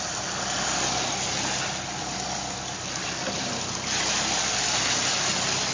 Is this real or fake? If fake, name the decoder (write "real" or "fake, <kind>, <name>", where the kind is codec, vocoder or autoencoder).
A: real